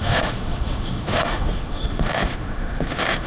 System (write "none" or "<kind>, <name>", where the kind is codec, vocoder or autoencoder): autoencoder, DAC-VAE